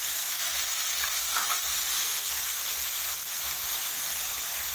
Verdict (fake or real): fake